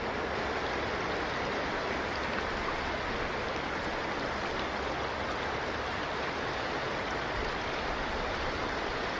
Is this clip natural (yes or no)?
yes